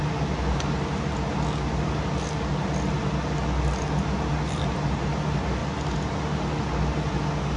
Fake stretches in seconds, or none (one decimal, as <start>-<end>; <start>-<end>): none